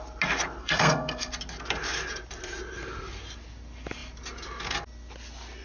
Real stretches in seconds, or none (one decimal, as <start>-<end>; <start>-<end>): 0.0-0.6; 1.3-5.6